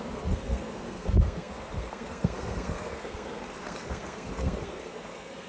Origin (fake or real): fake